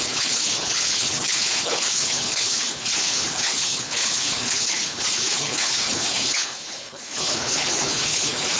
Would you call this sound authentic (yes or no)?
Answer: no